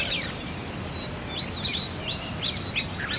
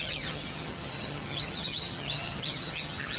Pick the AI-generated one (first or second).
second